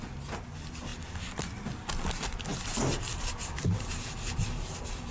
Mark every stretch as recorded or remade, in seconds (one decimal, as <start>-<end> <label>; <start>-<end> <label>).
0.0-5.1 recorded